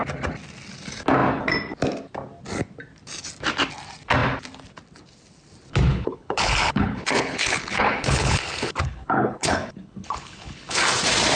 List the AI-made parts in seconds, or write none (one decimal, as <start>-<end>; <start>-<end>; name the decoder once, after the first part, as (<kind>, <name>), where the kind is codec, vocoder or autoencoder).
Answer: 5.9-10.8 (codec, HILCodec)